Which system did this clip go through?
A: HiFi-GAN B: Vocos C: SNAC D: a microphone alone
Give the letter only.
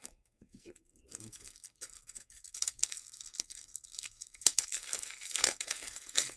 C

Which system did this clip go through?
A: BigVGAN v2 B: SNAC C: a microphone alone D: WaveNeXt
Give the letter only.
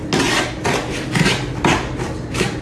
C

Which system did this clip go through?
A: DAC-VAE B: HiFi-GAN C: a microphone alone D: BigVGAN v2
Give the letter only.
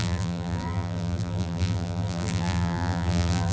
D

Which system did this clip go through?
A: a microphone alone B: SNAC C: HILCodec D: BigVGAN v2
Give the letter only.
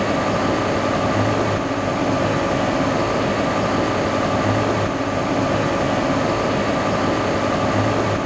A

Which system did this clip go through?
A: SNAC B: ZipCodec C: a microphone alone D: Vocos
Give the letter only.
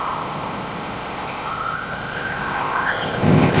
B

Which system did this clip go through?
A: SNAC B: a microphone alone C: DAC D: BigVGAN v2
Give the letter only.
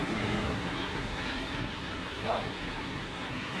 A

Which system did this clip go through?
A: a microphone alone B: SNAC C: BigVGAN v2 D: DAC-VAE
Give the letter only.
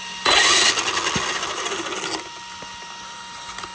A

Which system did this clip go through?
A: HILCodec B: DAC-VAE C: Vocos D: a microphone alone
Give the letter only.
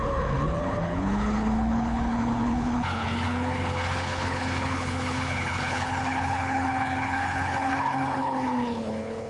A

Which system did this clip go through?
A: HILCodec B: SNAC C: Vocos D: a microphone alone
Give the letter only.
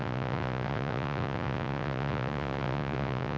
C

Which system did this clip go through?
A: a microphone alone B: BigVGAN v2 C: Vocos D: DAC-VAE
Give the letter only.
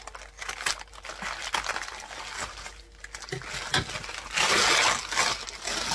A